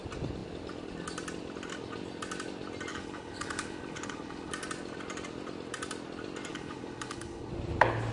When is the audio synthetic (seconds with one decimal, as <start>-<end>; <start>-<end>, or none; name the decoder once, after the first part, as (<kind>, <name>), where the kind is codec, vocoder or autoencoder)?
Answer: 2.9-4.5 (codec, HILCodec); 6.5-7.5